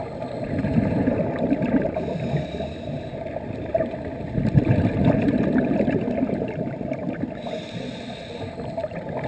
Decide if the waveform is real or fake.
real